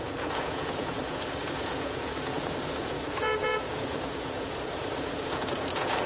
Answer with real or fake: fake